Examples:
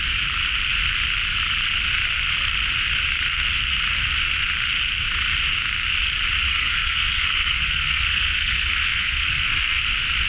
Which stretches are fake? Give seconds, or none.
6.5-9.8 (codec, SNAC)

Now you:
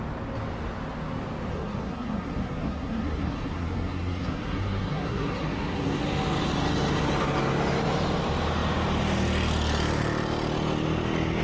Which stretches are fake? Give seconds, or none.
1.5-6.0 (codec, SNAC)

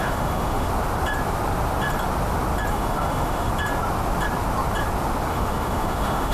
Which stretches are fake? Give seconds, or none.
0.0-0.7 (autoencoder, DAC-VAE); 2.7-3.5; 5.3-6.3

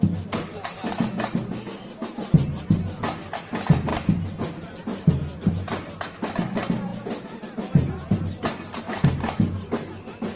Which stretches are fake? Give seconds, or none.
none

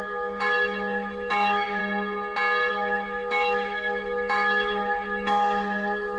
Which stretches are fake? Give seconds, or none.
0.0-1.8 (autoencoder, DAC-VAE); 2.7-6.2

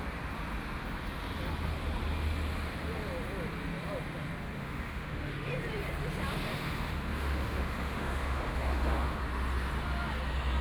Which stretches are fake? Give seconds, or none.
4.6-5.5 (autoencoder, DAC-VAE); 6.5-9.2

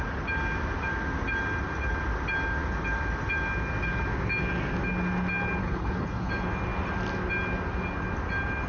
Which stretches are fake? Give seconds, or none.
5.6-6.3 (codec, HILCodec)